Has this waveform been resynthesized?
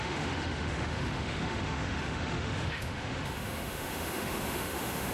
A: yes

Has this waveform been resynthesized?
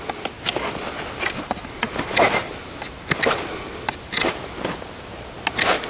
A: no